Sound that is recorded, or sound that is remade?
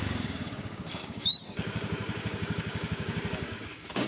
remade